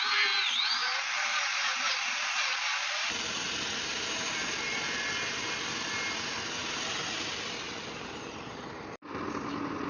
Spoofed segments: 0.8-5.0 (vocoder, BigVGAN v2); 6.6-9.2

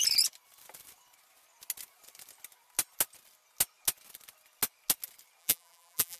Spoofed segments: 5.4-6.2 (vocoder, BigVGAN v2)

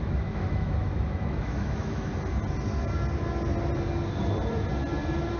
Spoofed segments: 0.0-2.1 (autoencoder, DAC-VAE)

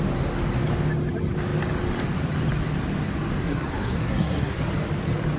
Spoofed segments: 3.4-4.6 (codec, SNAC)